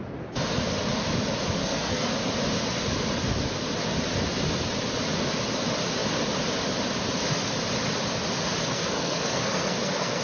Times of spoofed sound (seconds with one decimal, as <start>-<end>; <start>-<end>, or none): 1.6-2.1; 8.7-10.2